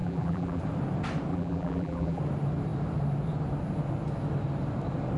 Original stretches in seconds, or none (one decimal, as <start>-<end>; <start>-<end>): 0.6-1.3; 2.2-5.2

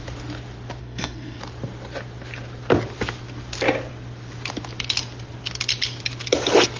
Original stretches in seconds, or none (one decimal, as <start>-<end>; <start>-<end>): 0.0-0.8; 1.4-6.8